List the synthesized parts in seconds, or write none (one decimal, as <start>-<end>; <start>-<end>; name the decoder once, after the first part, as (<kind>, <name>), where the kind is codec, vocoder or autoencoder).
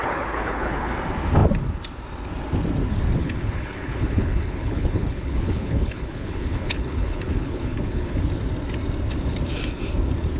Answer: 0.0-0.9 (codec, HILCodec); 3.2-8.2